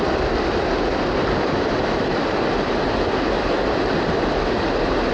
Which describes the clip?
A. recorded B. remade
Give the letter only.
A